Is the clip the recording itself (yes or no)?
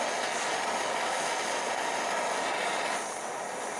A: yes